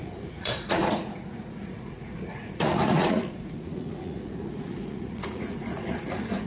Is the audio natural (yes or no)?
no